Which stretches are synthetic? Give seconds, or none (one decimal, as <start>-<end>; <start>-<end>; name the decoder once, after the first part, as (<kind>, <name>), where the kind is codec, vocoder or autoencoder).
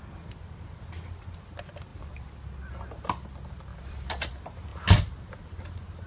1.9-2.5 (vocoder, BigVGAN v2); 3.7-4.3